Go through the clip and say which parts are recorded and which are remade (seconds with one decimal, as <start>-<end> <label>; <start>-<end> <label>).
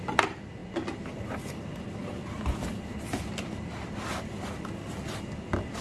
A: 0.0-5.8 recorded